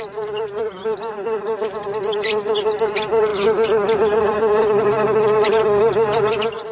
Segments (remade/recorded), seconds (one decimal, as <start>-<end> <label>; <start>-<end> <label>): 0.0-6.7 remade